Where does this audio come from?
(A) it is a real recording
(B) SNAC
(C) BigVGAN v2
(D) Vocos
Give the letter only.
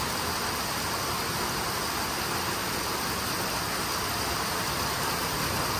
A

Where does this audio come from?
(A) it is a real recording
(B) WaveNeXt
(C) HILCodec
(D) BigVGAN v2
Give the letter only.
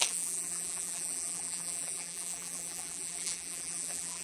D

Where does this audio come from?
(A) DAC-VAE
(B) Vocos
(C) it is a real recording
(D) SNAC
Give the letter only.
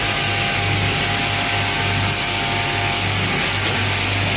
C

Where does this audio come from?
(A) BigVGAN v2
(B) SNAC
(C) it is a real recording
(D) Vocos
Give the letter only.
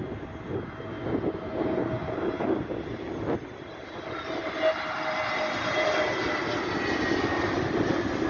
C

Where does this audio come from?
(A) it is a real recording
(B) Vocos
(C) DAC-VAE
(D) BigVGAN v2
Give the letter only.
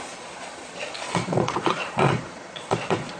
B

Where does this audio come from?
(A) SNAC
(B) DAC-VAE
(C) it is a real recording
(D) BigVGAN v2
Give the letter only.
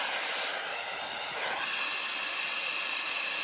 C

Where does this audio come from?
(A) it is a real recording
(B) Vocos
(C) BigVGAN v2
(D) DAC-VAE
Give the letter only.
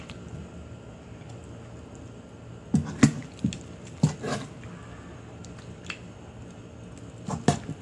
A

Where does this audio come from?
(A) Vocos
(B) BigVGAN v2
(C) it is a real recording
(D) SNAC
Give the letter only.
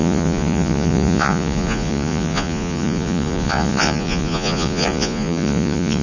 A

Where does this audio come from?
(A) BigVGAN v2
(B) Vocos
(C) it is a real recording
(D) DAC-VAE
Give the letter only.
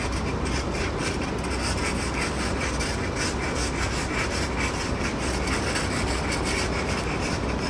C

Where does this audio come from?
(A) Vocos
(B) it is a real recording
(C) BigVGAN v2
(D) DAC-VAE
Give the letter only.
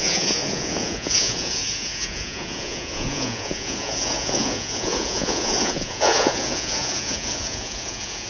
A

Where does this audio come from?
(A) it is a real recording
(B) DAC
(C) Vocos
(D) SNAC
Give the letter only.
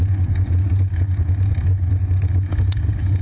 A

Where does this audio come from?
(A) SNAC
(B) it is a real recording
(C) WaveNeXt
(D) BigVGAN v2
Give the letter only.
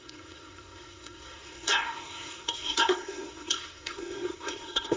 A